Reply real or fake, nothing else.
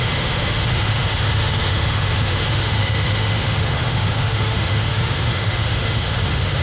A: fake